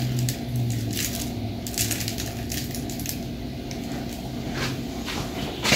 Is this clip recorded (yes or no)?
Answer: yes